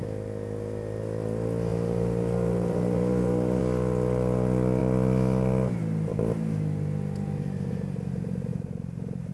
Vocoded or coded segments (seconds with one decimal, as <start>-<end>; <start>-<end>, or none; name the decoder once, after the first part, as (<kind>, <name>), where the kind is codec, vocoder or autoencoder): 1.7-3.6 (vocoder, BigVGAN v2); 8.5-9.3